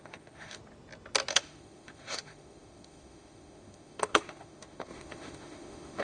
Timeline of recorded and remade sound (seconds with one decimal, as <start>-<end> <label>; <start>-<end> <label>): 0.0-0.6 remade; 0.6-1.3 recorded; 1.3-6.0 remade